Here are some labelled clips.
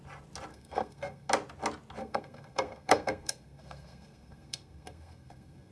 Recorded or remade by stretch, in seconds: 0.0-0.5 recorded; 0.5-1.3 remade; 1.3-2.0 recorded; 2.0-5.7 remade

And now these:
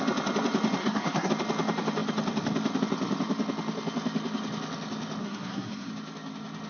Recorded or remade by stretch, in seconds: 0.0-0.8 recorded; 0.8-1.3 remade; 1.3-5.2 recorded; 5.2-5.9 remade; 5.9-6.7 recorded

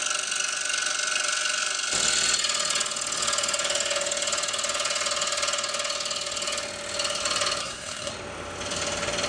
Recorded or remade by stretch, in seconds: 0.0-7.6 recorded; 7.6-8.1 remade; 8.1-9.3 recorded

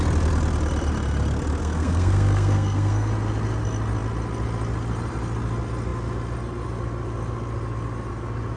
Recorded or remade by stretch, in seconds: 0.0-1.6 recorded; 1.6-3.1 remade; 3.1-8.6 recorded